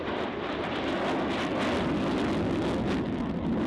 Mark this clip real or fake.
real